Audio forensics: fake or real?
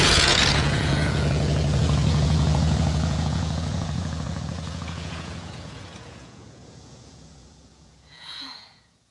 fake